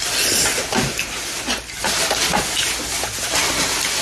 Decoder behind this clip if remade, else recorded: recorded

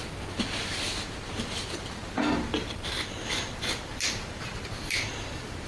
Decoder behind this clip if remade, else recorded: recorded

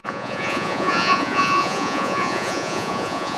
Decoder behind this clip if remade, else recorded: remade, vocoder, Vocos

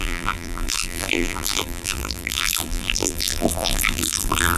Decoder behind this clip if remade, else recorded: remade, vocoder, BigVGAN v2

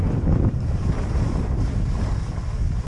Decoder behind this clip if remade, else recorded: recorded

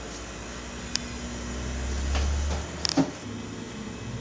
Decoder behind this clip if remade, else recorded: recorded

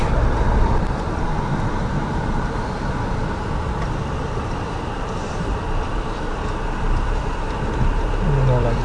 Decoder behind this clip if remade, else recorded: remade, vocoder, BigVGAN v2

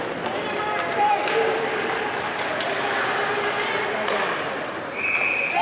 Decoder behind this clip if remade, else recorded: recorded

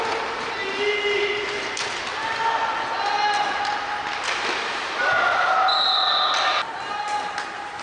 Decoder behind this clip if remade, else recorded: recorded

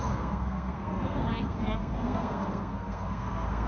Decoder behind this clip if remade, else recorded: remade, codec, SNAC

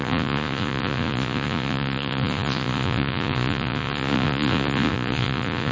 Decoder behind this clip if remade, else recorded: remade, vocoder, Vocos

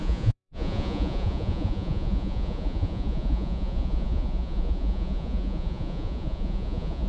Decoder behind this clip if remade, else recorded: remade, vocoder, Vocos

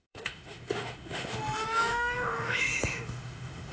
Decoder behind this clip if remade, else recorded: remade, autoencoder, DAC-VAE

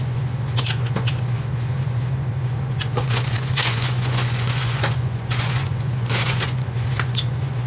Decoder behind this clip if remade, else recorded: remade, vocoder, Vocos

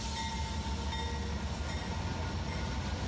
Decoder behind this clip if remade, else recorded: recorded